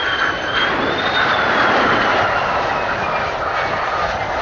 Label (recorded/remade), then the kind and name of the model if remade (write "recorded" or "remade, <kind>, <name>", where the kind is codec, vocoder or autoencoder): recorded